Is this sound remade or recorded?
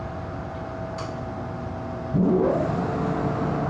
recorded